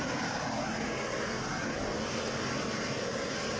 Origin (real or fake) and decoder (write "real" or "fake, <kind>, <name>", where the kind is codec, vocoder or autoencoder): real